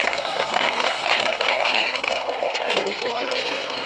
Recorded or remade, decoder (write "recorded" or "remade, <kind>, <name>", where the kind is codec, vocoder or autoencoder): remade, codec, SNAC